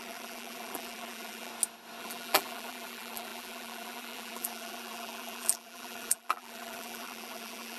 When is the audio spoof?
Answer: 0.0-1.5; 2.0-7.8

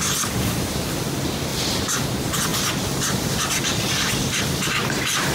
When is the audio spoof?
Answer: 0.0-1.5; 2.1-2.5; 3.2-5.3

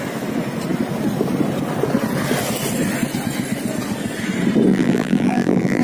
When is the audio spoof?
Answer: 4.7-5.8

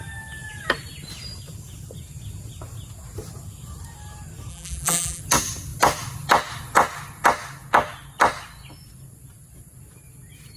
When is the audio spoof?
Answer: 4.5-5.2

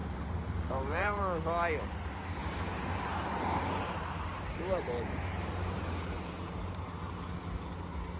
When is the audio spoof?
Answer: 0.0-1.2; 2.4-7.1

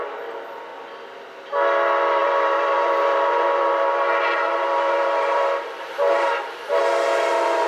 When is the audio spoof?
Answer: 2.2-6.8